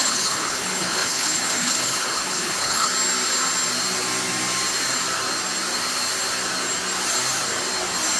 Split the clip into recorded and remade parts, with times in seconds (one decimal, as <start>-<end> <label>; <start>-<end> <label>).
0.0-2.9 remade; 2.9-8.2 recorded